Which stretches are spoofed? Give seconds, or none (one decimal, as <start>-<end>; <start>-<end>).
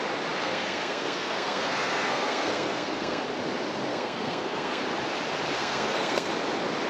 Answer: 0.4-3.2; 3.9-4.8; 5.6-6.3